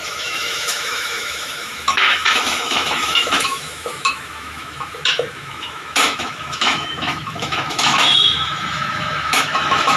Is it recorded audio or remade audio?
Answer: remade